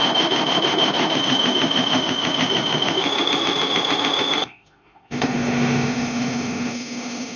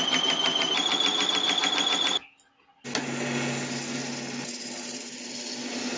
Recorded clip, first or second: second